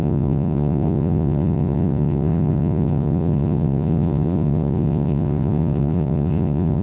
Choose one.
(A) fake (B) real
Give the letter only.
A